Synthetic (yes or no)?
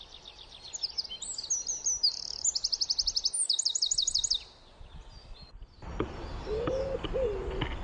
no